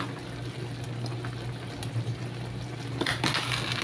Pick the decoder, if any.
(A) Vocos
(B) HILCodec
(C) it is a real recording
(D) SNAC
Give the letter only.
C